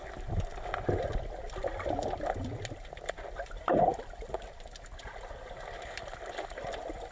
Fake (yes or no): no